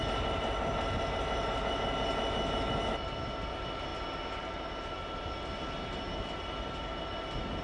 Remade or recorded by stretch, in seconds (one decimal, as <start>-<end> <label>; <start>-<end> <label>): 0.0-7.6 recorded